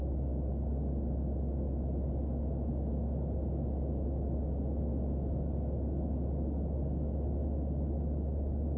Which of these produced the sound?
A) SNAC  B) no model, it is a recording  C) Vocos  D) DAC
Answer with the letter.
B